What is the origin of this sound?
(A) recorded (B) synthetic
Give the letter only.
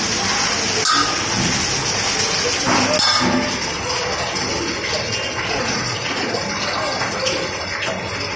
A